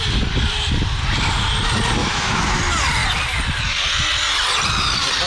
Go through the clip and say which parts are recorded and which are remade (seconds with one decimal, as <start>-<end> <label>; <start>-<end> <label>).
0.0-2.0 recorded; 2.0-2.6 remade; 2.6-5.3 recorded